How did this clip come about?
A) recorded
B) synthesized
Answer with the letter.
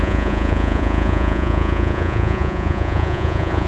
B